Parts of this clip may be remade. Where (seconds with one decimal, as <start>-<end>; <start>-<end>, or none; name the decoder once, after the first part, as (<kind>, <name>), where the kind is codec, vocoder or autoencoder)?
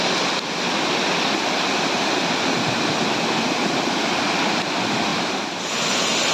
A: 5.1-5.6 (vocoder, BigVGAN v2)